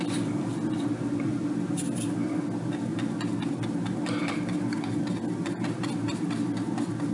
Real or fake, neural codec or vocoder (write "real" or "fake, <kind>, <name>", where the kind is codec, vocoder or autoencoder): real